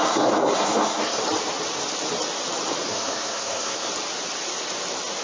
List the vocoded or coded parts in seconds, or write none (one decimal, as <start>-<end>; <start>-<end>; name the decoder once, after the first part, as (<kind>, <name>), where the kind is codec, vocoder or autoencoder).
0.0-1.2 (codec, SNAC); 2.9-3.9